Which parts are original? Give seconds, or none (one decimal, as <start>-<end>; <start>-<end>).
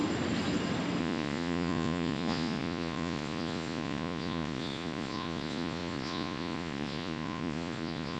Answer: 0.0-1.0